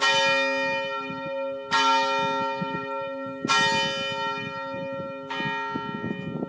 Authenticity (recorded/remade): recorded